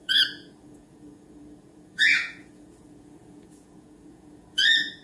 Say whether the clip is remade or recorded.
remade